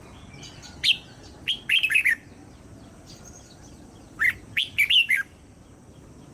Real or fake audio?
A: real